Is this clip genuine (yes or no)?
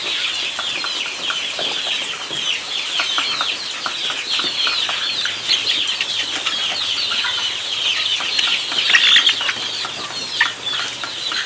yes